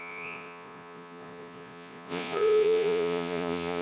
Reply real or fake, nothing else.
fake